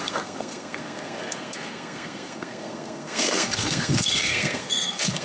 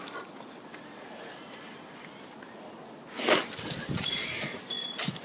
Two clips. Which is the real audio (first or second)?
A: second